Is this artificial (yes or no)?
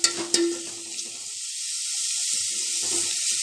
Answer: no